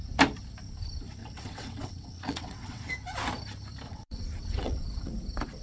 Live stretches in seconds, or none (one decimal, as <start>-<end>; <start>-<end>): 0.0-1.2; 2.9-3.9; 5.1-5.6